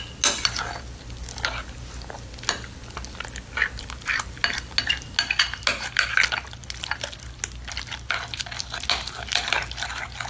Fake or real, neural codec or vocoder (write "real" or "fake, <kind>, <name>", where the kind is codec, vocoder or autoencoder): real